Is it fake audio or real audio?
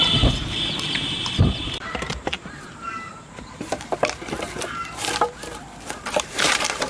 fake